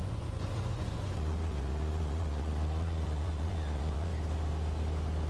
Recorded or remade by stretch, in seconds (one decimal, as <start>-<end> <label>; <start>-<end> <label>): 0.0-4.1 remade; 4.1-5.3 recorded